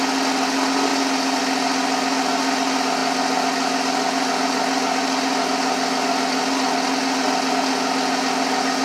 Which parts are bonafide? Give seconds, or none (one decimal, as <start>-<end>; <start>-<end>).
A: 0.0-8.8